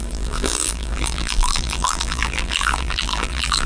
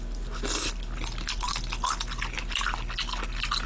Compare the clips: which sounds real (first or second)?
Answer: second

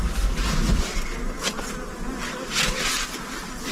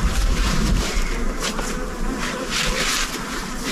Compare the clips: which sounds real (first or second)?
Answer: first